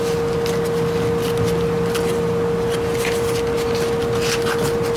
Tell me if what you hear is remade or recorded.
recorded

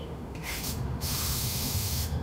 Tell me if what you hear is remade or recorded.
remade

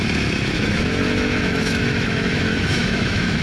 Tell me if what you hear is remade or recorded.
remade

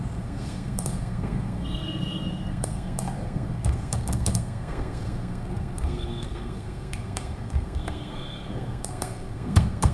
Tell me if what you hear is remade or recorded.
remade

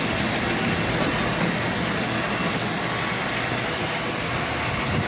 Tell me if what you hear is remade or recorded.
recorded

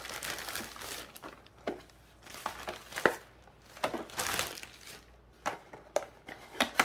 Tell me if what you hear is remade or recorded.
recorded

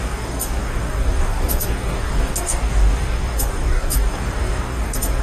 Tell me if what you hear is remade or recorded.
remade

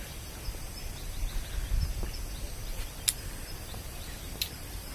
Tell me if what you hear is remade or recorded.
recorded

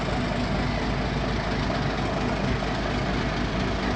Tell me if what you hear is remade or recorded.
recorded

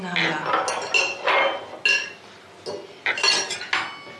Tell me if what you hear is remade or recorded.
recorded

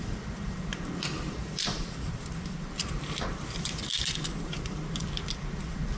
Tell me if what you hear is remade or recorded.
remade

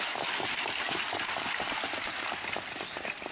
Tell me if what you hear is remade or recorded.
recorded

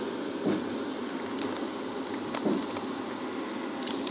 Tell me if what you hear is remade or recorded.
recorded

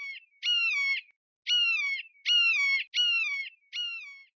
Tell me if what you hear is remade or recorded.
recorded